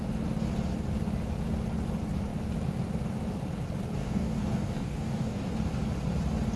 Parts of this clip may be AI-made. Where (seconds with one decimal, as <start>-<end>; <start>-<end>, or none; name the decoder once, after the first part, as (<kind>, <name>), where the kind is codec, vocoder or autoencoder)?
4.0-5.5 (codec, DAC)